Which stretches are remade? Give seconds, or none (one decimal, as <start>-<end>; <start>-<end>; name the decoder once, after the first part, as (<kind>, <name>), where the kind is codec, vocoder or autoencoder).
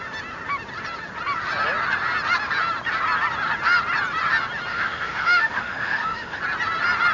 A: 4.7-6.4 (autoencoder, DAC-VAE)